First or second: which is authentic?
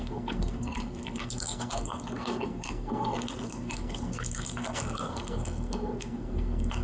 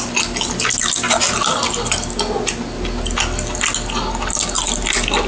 second